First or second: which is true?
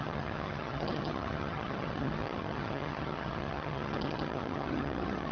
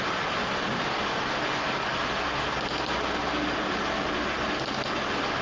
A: second